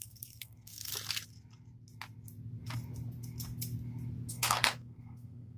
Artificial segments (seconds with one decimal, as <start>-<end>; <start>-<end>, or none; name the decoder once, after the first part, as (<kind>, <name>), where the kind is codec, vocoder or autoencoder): 0.0-0.9 (codec, SNAC); 4.3-5.6